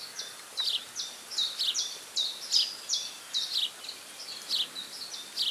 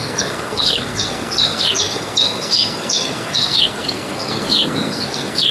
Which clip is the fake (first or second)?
second